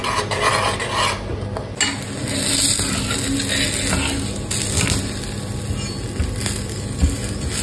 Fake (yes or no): no